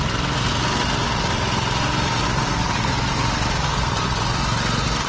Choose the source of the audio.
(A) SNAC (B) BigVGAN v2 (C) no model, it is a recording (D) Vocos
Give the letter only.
C